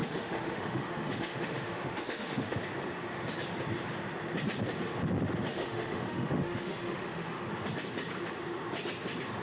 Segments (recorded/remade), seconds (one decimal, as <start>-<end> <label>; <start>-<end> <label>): 0.0-2.6 remade; 2.6-5.5 recorded; 5.5-7.5 remade; 7.5-9.4 recorded